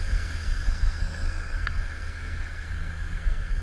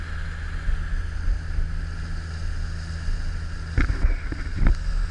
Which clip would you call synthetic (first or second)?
first